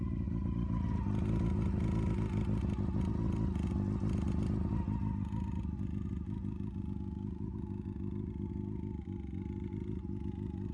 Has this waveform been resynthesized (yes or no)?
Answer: no